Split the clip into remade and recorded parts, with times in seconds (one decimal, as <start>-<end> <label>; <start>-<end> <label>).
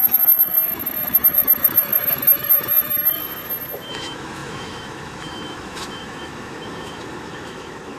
0.0-3.2 remade; 3.2-3.9 recorded; 3.9-8.0 remade